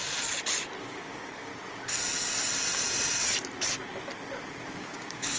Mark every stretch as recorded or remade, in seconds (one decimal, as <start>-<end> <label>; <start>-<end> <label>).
0.0-0.8 recorded; 0.8-1.5 remade; 1.5-4.7 recorded; 4.7-5.4 remade